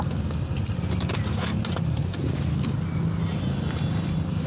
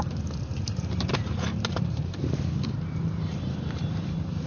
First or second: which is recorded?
first